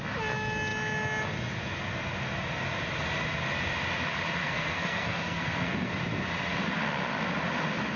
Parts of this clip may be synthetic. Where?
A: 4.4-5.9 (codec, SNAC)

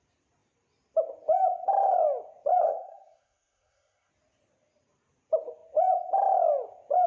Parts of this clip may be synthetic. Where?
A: 2.6-4.1 (codec, SNAC)